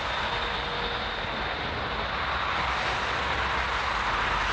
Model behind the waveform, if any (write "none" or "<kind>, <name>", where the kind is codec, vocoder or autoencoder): none